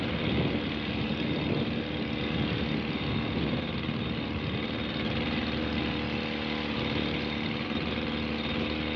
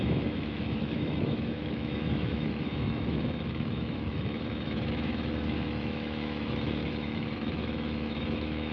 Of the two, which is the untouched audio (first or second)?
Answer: first